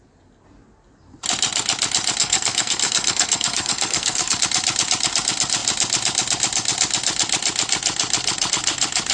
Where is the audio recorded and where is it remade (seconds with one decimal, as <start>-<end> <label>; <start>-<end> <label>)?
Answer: 0.0-2.2 recorded; 2.2-4.4 remade; 4.4-9.1 recorded